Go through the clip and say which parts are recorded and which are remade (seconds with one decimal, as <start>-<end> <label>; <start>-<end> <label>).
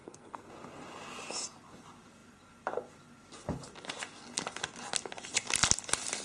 0.0-0.5 remade; 0.5-6.2 recorded